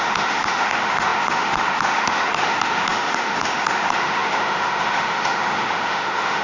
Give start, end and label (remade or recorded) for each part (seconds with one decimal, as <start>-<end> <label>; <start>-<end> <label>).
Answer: 0.0-6.4 remade